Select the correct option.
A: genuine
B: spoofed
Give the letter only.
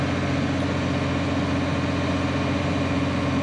A